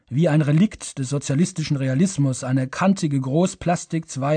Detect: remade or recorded recorded